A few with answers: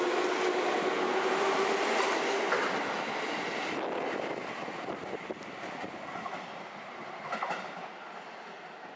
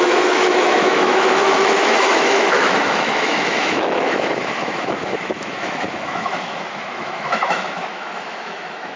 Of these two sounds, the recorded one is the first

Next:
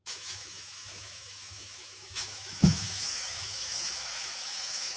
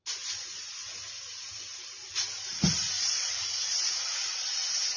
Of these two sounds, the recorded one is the second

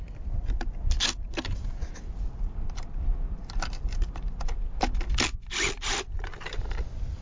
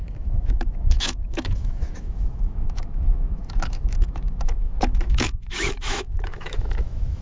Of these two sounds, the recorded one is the first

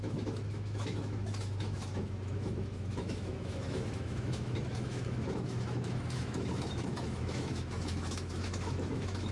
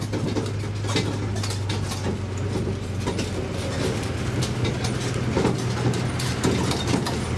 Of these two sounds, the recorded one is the second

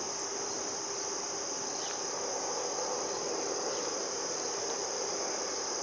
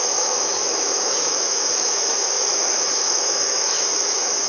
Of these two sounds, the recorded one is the first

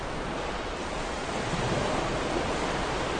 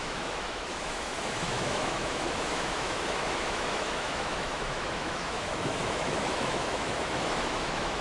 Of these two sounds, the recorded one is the first